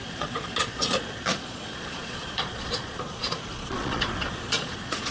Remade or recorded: remade